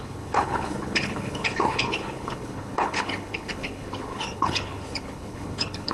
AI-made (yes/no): yes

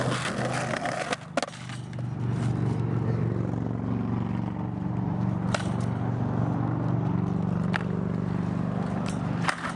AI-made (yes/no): no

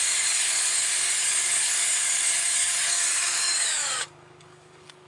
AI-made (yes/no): yes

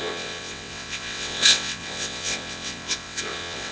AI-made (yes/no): yes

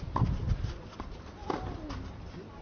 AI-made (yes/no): no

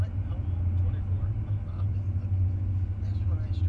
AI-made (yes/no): no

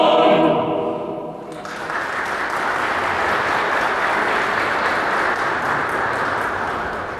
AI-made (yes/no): no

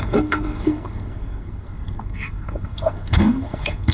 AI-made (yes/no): yes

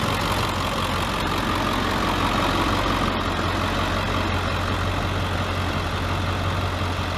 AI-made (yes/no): no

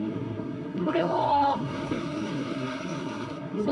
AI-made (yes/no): yes